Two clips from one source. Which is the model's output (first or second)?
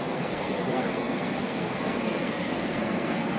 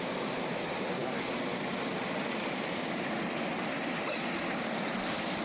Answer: first